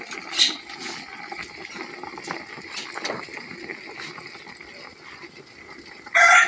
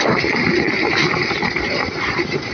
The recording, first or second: first